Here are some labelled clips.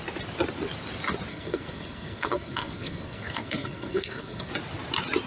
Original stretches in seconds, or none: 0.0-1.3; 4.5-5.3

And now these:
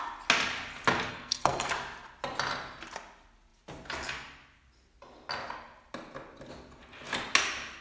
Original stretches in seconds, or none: 0.0-1.1; 1.7-7.8

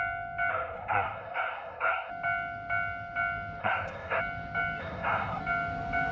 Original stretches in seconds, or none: 0.0-0.5; 2.1-3.6; 4.2-4.8; 5.4-6.1

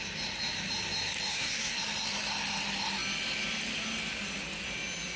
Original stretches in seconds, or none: 0.0-1.3; 1.8-5.2

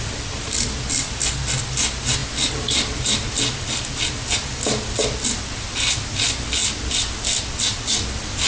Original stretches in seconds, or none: 0.0-8.5

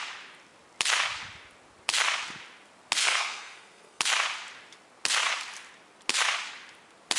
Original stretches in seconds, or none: 0.0-3.0; 4.0-7.2

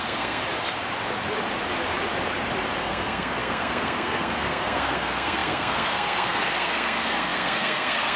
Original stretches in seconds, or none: 0.4-2.8

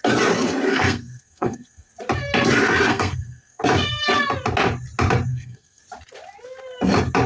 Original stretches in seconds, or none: 0.0-0.7; 1.9-2.9; 3.6-5.3; 5.8-7.3